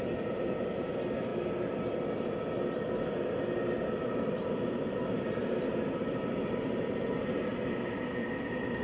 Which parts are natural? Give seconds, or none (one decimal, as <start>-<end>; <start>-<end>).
1.3-4.3